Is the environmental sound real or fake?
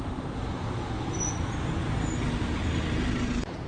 real